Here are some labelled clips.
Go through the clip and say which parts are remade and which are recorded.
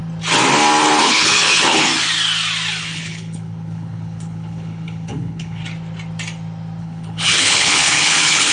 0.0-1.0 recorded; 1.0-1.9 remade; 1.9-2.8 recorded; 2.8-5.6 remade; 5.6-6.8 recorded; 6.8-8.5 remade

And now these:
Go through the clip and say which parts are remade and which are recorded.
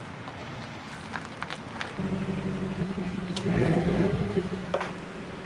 0.0-2.8 recorded; 2.8-4.9 remade; 4.9-5.5 recorded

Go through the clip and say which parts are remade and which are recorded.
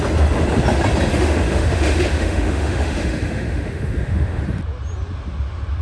0.0-1.1 recorded; 1.1-4.4 remade; 4.4-5.8 recorded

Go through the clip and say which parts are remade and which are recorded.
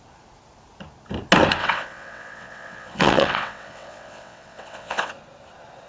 0.0-1.6 recorded; 1.6-5.1 remade; 5.1-5.9 recorded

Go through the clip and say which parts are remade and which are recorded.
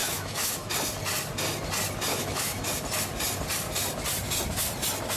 0.0-0.7 remade; 0.7-2.1 recorded; 2.1-2.7 remade; 2.7-5.2 recorded